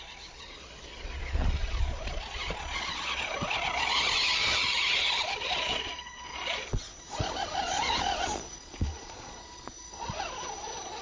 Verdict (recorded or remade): remade